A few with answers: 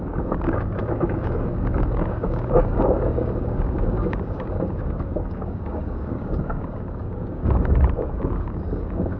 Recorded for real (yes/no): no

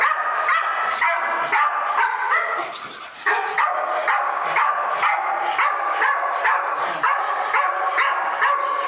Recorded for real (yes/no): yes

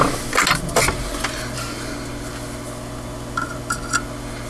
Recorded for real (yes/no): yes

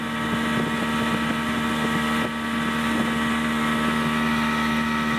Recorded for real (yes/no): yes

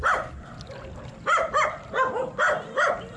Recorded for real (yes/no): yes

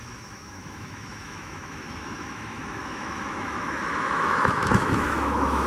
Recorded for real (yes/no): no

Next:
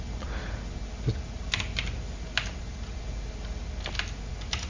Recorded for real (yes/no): yes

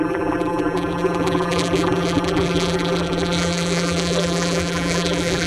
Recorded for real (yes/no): no